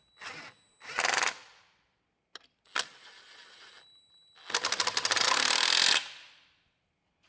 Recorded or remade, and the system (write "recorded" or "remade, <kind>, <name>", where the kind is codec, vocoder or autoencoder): recorded